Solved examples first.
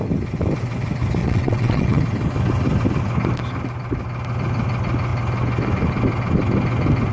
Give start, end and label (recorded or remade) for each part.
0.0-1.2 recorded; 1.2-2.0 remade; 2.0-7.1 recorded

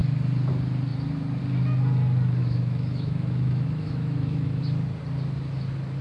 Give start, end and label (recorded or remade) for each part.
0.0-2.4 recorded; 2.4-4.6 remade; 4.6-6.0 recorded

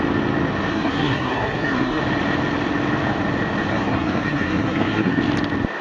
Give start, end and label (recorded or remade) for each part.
0.0-0.7 recorded; 0.7-2.0 remade; 2.0-3.7 recorded; 3.7-5.2 remade; 5.2-5.8 recorded

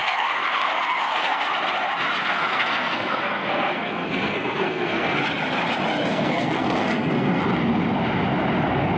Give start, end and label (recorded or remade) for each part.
0.0-1.5 remade; 1.5-2.2 recorded; 2.2-5.2 remade; 5.2-6.1 recorded; 6.1-7.4 remade; 7.4-9.0 recorded